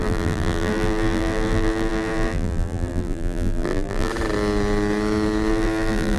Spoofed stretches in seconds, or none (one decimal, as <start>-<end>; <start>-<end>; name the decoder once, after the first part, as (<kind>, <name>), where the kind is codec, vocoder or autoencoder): 0.0-4.1 (vocoder, BigVGAN v2); 5.5-6.2